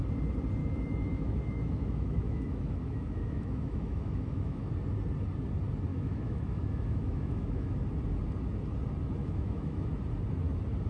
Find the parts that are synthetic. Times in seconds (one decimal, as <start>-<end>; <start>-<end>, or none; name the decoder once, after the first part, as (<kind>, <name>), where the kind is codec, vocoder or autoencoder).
0.6-4.7 (autoencoder, DAC-VAE); 5.9-7.8; 9.2-10.0